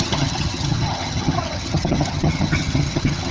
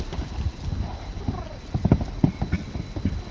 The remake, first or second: first